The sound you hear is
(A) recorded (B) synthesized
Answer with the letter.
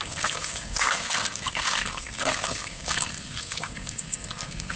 B